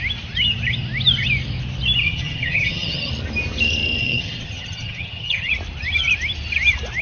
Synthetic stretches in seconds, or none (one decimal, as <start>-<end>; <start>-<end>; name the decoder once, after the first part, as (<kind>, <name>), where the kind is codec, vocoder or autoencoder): 2.0-3.1 (vocoder, HiFi-GAN); 4.0-5.5